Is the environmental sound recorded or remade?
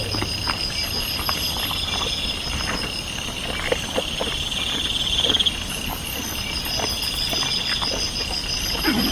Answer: recorded